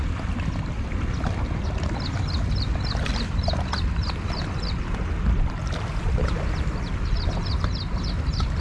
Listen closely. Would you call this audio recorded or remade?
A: recorded